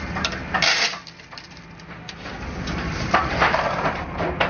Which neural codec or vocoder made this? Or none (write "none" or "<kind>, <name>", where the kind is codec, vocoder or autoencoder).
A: vocoder, BigVGAN v2